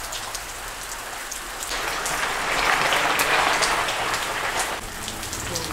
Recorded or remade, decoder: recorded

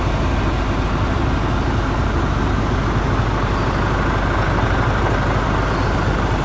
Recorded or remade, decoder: recorded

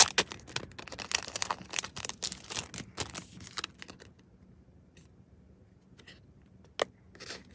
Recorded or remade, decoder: recorded